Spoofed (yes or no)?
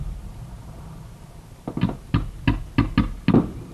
no